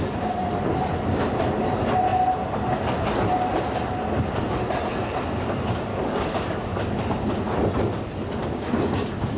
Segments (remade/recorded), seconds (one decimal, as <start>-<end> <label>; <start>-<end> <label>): 0.0-5.9 recorded; 5.9-6.6 remade; 6.6-8.4 recorded; 8.4-9.4 remade